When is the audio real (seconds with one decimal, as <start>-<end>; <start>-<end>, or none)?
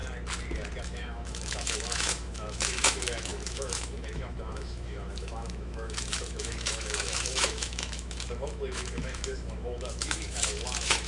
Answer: 0.0-0.8